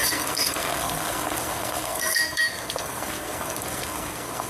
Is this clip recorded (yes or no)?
no